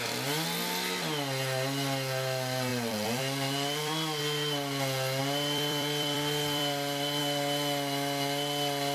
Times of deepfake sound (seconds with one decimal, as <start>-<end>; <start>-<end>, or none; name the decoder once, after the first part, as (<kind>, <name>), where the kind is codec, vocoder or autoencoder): 2.7-4.2 (vocoder, BigVGAN v2); 5.2-7.2